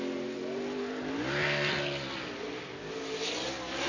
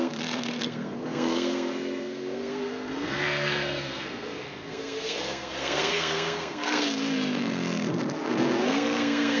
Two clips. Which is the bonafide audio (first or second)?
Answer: first